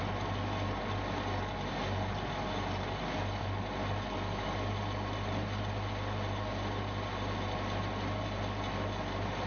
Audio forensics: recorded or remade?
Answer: recorded